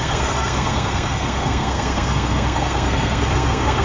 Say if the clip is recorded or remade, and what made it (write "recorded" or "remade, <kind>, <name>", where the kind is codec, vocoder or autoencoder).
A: remade, codec, SNAC